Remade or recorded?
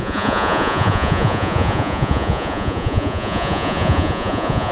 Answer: remade